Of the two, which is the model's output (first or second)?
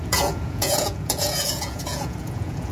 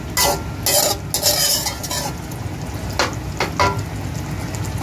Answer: first